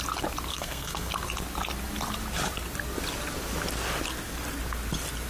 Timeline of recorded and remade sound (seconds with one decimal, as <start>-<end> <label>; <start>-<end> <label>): 0.0-0.5 recorded; 0.5-1.1 remade; 1.1-5.3 recorded